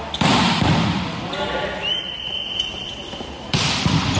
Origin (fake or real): fake